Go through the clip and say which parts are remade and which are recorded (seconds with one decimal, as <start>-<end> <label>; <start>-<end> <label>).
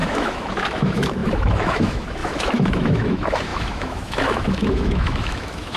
0.0-5.8 remade